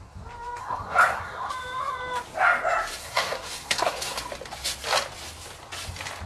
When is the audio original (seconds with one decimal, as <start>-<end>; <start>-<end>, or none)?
0.0-0.6; 1.5-3.0; 4.2-6.3